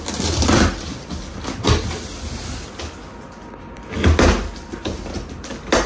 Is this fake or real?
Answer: real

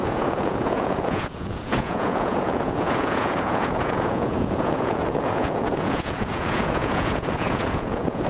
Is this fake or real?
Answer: fake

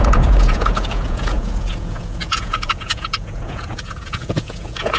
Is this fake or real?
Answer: fake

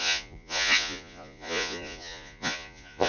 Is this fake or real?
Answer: fake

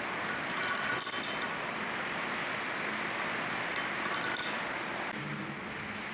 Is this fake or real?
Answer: real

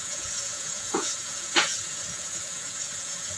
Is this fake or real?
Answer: fake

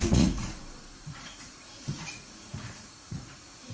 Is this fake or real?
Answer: fake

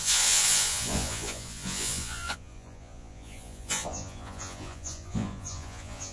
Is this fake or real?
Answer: fake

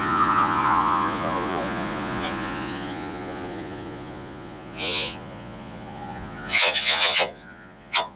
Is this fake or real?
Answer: fake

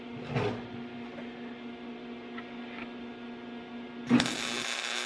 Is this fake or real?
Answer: real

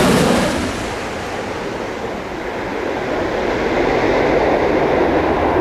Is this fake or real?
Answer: real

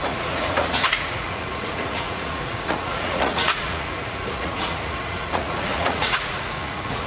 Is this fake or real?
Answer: fake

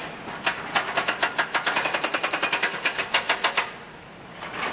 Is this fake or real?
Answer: real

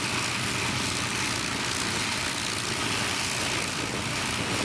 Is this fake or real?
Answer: real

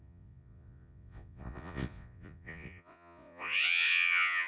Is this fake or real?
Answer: fake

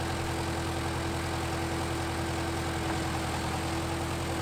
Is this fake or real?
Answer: real